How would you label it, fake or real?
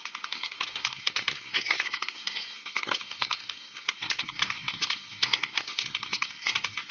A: fake